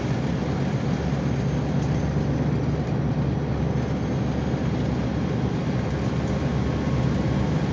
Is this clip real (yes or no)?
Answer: yes